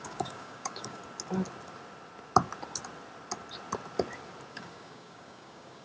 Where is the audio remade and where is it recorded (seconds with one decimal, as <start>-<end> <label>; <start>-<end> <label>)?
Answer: 0.0-1.0 remade; 1.0-4.5 recorded; 4.5-5.8 remade